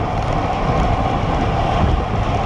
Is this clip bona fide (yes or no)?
yes